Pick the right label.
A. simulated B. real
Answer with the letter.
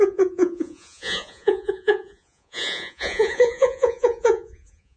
A